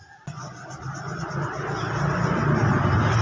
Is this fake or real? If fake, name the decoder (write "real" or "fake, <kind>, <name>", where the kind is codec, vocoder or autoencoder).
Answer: real